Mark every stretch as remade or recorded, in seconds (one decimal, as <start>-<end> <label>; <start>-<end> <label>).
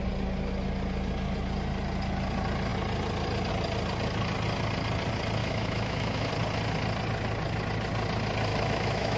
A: 0.0-5.4 recorded; 5.4-6.3 remade; 6.3-8.5 recorded; 8.5-9.2 remade